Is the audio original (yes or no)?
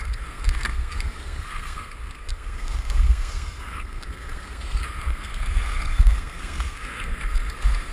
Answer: no